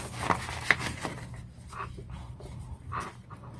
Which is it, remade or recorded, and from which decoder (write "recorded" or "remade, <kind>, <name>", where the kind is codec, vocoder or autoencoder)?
recorded